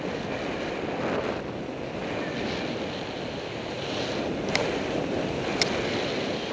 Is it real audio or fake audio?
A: real